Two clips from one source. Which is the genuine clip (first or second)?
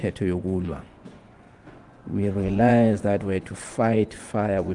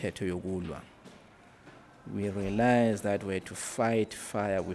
second